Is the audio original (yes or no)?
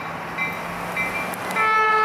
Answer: yes